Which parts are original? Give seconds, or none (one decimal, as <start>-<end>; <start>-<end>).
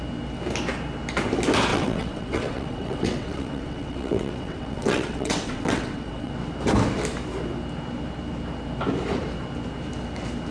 0.0-1.7; 6.3-10.5